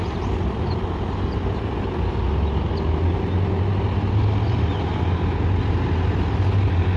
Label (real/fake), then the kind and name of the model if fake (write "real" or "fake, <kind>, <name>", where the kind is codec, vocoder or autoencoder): real